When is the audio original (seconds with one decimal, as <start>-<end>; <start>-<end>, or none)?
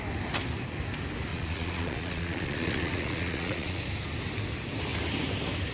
0.0-1.3; 3.8-5.7